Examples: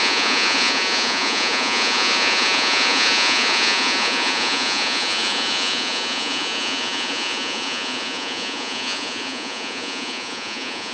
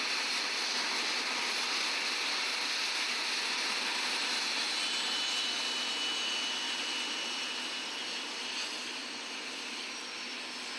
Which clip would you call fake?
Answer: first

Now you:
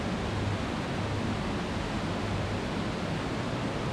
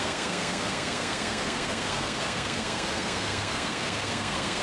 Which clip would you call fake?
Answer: second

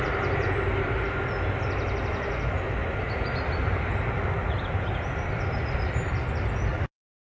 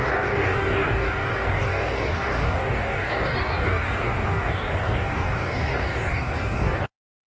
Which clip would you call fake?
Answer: second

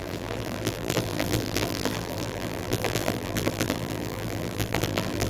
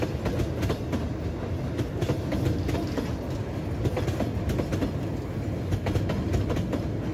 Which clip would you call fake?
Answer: first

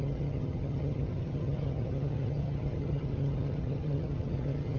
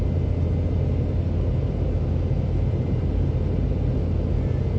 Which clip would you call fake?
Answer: first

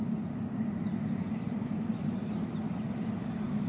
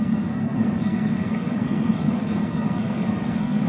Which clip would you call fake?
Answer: second